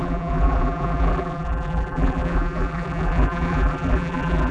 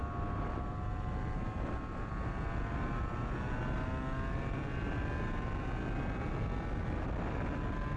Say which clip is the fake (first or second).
first